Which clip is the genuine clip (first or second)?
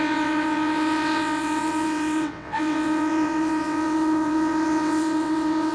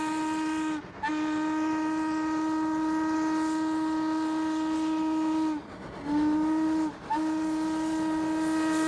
second